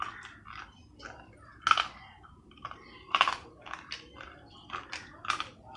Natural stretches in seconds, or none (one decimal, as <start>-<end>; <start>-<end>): 1.5-2.4